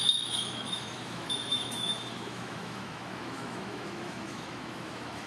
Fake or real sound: fake